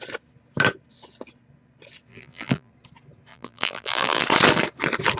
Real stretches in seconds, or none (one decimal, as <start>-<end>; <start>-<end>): 0.0-2.1; 2.7-3.3; 4.2-5.2